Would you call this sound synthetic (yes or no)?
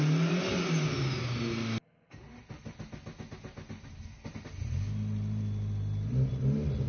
no